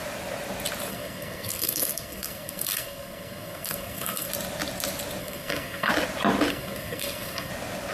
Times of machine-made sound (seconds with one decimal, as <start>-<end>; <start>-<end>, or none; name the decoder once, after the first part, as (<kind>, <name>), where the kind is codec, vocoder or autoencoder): 0.9-4.3 (codec, SNAC); 5.2-5.9; 6.5-7.5